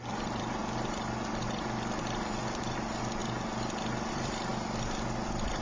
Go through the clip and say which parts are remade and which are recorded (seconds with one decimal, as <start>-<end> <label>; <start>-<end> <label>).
0.0-0.6 remade; 0.6-2.0 recorded; 2.0-3.2 remade; 3.2-4.1 recorded; 4.1-4.5 remade; 4.5-5.6 recorded

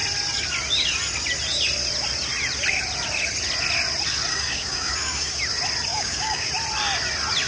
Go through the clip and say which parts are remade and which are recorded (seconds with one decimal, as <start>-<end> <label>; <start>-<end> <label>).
0.0-4.3 recorded; 4.3-5.4 remade; 5.4-5.9 recorded; 5.9-6.5 remade; 6.5-7.5 recorded